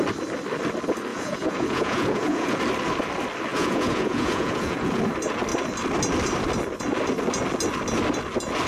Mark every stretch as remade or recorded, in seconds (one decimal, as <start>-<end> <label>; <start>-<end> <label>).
0.0-1.1 recorded; 1.1-2.6 remade; 2.6-3.5 recorded; 3.5-5.0 remade; 5.0-8.7 recorded